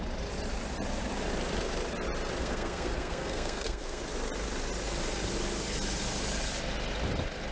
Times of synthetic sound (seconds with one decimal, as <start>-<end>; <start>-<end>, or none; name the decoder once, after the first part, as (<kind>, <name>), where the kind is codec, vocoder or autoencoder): 2.4-4.0 (codec, SNAC)